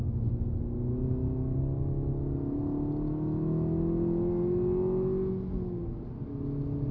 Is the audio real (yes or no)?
yes